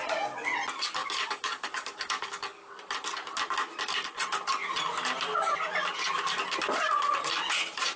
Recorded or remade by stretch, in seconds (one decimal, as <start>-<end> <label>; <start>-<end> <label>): 0.0-1.0 recorded; 1.0-2.7 remade; 2.7-8.0 recorded